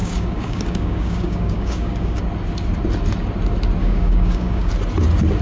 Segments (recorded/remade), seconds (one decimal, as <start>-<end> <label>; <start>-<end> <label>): 0.0-2.2 remade; 2.2-3.8 recorded; 3.8-4.7 remade; 4.7-5.4 recorded